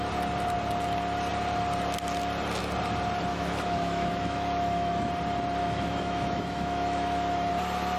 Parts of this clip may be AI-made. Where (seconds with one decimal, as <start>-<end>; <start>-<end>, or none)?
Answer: 3.3-5.1; 5.6-7.5